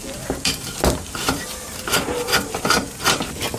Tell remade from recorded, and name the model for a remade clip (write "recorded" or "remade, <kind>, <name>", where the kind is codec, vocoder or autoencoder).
recorded